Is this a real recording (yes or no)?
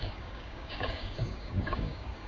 no